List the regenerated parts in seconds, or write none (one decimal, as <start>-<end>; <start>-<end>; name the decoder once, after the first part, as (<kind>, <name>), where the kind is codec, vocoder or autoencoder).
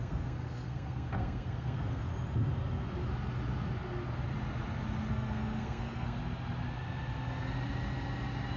0.0-2.1 (codec, SNAC); 5.1-6.2